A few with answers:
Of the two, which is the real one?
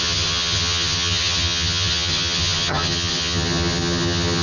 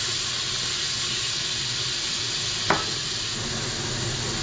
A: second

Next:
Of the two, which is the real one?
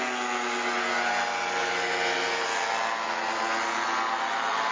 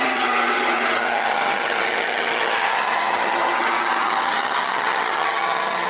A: first